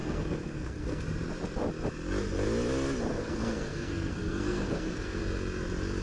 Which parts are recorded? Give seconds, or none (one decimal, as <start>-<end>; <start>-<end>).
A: 1.0-3.1; 5.2-6.0